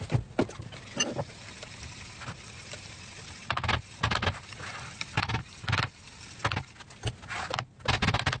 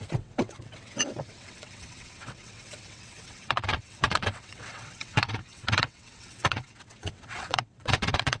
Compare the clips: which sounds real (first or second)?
first